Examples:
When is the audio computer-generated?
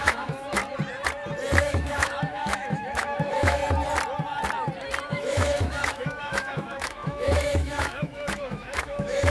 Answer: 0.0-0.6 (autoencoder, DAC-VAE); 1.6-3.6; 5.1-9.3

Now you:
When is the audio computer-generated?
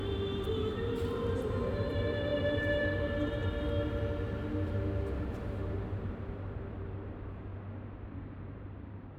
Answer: 0.7-3.4 (vocoder, BigVGAN v2); 5.2-7.5; 8.1-9.2